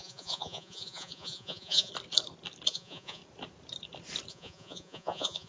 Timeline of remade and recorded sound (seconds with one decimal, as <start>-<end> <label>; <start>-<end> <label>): 0.0-1.9 remade; 1.9-2.7 recorded; 2.7-3.2 remade; 3.2-4.3 recorded; 4.3-5.5 remade